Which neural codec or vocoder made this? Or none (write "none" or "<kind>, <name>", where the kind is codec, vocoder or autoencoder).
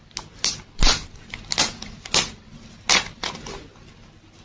none